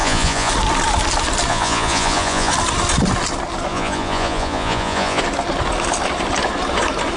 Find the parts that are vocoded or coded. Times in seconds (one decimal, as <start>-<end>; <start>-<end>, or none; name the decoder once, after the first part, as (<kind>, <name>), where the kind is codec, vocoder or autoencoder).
0.0-0.5 (vocoder, Vocos); 1.5-2.5; 3.7-5.2